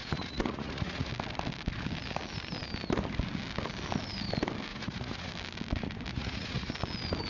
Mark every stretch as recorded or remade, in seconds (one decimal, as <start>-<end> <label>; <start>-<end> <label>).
0.0-1.1 remade; 1.1-4.7 recorded; 4.7-5.3 remade; 5.3-6.1 recorded; 6.1-6.7 remade; 6.7-7.3 recorded